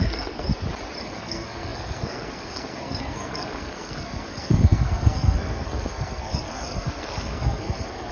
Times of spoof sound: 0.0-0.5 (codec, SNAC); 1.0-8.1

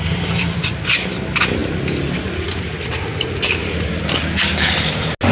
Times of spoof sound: 1.6-4.2 (vocoder, BigVGAN v2)

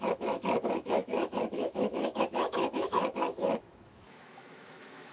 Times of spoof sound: 0.0-5.1 (autoencoder, DAC-VAE)